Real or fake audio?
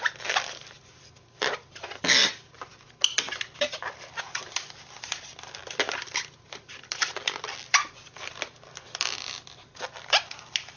fake